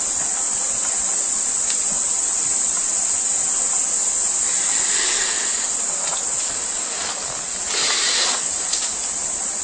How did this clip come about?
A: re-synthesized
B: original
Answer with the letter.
B